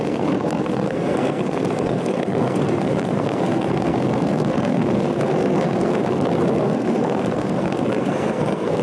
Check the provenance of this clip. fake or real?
fake